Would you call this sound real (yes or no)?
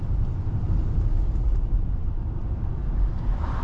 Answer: no